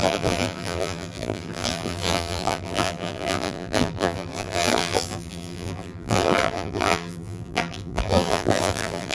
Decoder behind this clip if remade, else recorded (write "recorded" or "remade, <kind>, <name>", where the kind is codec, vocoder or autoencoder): remade, vocoder, BigVGAN v2